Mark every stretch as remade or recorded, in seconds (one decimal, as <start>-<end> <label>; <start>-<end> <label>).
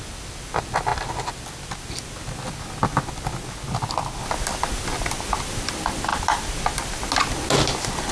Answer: 0.0-8.1 recorded